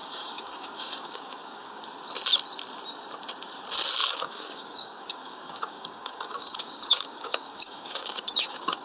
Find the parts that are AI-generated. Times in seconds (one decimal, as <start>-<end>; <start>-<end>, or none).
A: 0.0-1.8; 4.0-8.8